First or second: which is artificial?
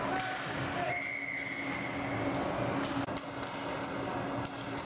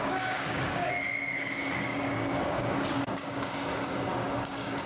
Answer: second